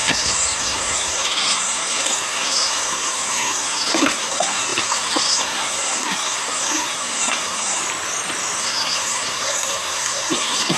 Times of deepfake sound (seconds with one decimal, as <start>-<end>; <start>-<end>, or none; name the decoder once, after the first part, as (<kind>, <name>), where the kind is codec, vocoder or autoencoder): 0.0-7.8 (codec, SNAC); 8.6-10.8